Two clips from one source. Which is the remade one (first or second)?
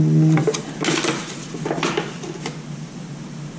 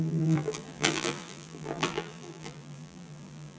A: second